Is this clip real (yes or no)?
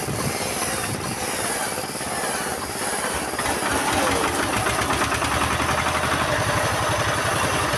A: yes